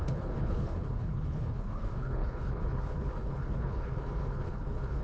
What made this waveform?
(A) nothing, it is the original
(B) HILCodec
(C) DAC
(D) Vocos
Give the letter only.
B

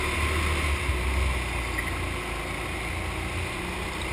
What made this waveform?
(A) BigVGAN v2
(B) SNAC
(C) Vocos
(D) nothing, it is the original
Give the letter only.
D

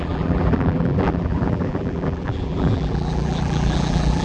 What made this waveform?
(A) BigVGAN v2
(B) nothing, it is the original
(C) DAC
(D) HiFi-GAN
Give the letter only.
A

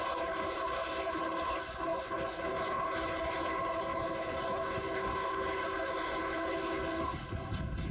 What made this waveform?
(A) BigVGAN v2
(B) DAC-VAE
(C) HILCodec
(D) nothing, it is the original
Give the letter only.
C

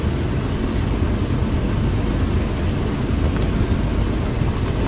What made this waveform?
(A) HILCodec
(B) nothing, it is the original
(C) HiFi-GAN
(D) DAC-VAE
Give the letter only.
B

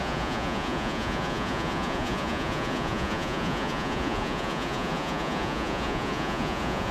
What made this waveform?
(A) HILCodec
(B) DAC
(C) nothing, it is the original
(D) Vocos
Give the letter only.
D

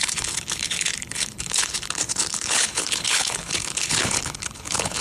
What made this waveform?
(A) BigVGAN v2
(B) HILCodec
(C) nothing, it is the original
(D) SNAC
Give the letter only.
B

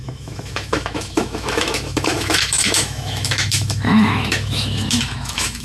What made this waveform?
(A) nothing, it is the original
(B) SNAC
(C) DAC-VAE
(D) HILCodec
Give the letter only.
C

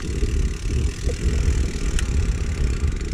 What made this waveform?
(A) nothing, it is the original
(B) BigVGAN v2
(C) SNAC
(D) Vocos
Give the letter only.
A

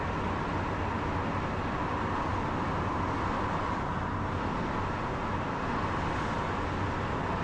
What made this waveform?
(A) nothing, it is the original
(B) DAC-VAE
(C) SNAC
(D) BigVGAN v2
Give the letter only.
A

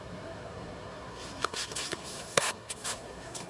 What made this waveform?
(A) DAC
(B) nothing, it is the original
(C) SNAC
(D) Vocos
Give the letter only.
C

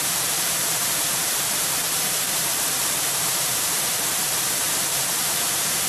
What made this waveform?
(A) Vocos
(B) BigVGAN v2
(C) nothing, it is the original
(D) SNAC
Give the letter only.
B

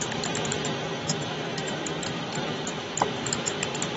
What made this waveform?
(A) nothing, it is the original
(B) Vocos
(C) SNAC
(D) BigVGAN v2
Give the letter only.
D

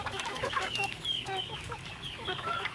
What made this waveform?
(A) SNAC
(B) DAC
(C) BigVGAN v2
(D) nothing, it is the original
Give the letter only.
B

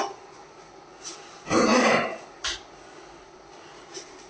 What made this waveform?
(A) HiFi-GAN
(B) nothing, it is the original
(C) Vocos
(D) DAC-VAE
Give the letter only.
B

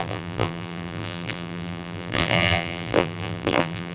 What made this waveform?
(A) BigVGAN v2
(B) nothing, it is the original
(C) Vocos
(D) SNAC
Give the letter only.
A